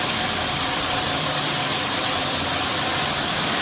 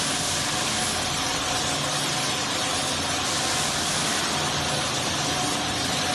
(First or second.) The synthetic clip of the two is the first